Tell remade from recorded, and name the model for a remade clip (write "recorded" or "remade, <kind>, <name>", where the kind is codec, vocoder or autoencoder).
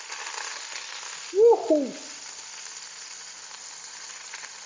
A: recorded